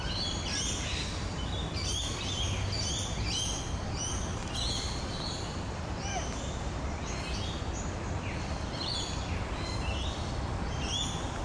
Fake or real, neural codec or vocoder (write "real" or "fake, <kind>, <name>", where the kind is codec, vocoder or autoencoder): real